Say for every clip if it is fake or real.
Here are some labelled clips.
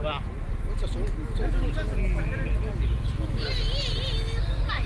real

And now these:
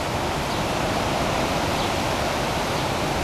real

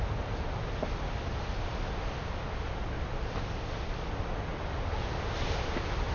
real